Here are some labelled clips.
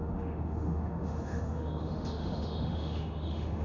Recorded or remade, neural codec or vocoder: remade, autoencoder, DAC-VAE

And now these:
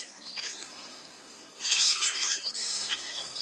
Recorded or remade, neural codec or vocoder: remade, codec, SNAC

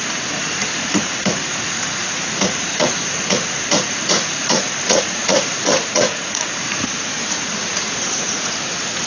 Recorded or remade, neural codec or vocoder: remade, vocoder, Vocos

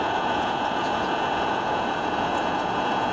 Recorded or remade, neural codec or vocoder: remade, vocoder, Vocos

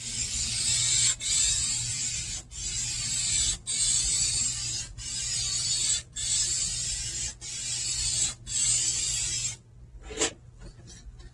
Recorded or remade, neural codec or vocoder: recorded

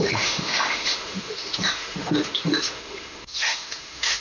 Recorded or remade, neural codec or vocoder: remade, autoencoder, DAC-VAE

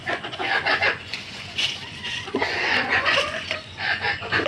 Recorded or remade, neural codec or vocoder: remade, vocoder, Vocos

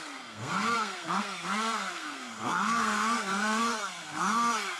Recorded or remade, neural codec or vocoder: remade, codec, SNAC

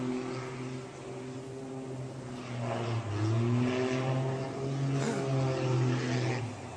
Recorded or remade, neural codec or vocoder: recorded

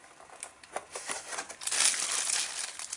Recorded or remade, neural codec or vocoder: recorded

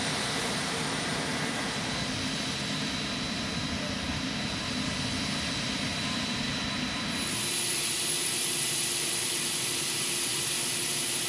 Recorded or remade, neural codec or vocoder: recorded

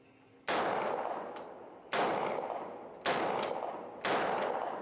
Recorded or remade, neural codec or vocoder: recorded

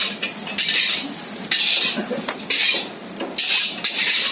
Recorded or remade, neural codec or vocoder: recorded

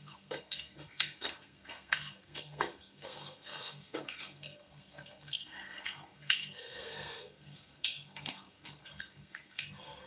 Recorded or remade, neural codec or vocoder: remade, codec, SNAC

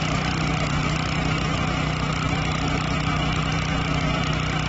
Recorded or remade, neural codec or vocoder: remade, vocoder, BigVGAN v2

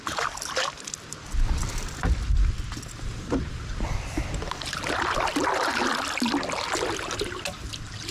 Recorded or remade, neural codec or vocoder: recorded